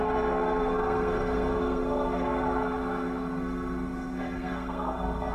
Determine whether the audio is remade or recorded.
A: remade